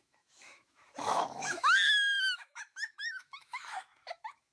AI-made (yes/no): yes